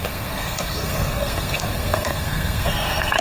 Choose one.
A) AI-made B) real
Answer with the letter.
A